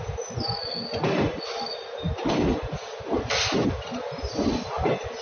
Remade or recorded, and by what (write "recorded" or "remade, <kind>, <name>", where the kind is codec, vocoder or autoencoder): recorded